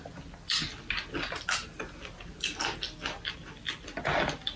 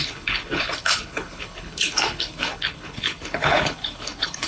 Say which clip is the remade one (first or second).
second